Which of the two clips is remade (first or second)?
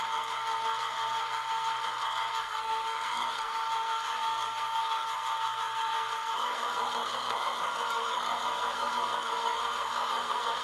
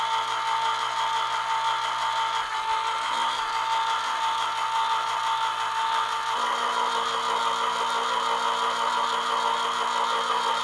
first